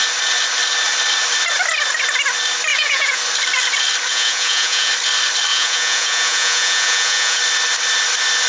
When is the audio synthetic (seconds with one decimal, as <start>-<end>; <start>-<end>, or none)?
2.7-3.2; 4.1-4.9; 5.5-7.4